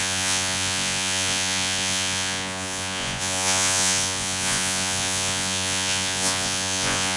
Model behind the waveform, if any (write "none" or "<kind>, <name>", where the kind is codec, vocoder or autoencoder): vocoder, Vocos